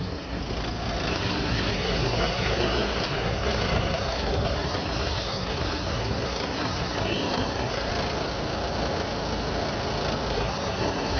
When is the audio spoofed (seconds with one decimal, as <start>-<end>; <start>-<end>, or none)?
0.0-0.4; 1.1-7.9; 10.3-11.2